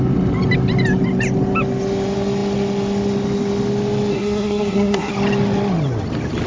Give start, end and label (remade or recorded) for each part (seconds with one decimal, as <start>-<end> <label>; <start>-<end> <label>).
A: 0.0-4.1 recorded; 4.1-5.1 remade; 5.1-6.5 recorded